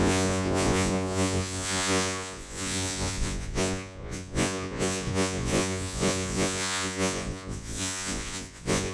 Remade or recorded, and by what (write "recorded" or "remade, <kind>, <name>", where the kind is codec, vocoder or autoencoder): remade, vocoder, Vocos